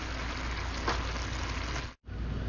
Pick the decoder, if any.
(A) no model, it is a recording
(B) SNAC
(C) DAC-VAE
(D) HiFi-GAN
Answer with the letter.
A